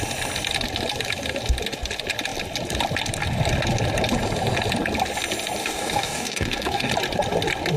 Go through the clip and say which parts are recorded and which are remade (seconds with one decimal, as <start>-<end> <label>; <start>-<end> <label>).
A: 0.0-5.6 recorded; 5.6-6.9 remade; 6.9-7.8 recorded